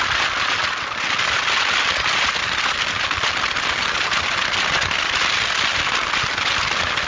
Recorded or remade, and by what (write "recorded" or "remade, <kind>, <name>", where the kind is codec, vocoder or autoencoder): recorded